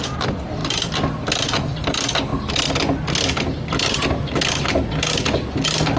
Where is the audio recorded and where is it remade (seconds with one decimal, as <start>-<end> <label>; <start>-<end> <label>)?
0.0-6.0 recorded